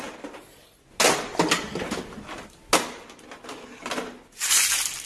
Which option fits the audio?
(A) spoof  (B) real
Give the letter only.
B